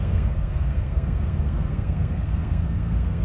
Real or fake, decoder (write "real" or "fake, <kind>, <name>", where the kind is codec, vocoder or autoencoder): fake, codec, SNAC